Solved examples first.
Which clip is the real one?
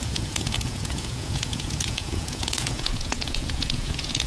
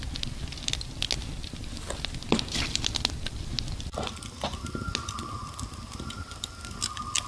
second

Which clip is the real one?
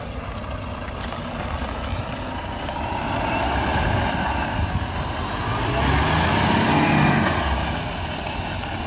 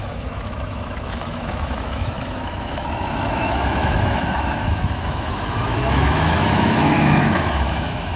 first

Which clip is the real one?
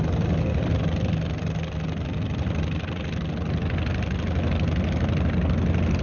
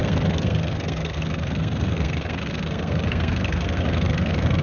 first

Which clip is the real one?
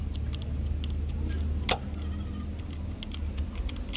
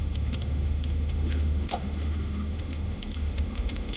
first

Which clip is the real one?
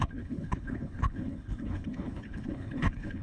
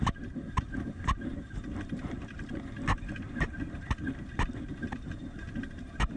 second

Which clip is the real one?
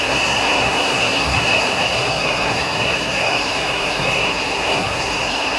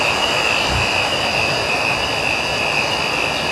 second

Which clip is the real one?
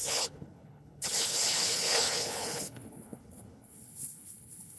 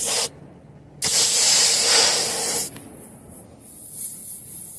second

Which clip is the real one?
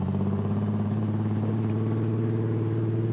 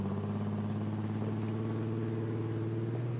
second